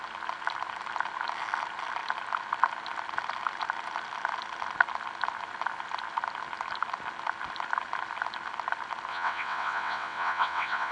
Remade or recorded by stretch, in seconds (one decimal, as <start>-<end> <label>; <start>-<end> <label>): 0.0-9.1 recorded; 9.1-10.9 remade